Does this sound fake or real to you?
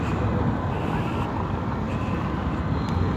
real